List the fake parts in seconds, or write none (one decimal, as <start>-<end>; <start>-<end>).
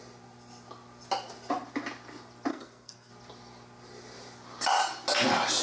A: 2.5-3.1